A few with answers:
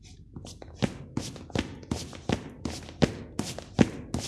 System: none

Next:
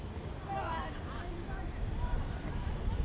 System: none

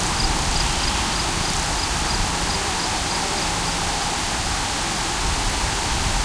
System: none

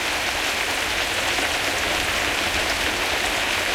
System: none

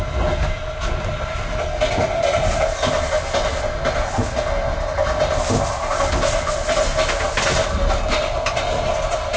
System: none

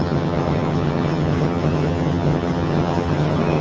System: vocoder, HiFi-GAN